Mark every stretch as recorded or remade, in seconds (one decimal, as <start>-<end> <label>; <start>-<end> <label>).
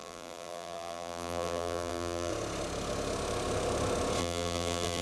0.0-2.3 remade; 2.3-4.2 recorded; 4.2-5.0 remade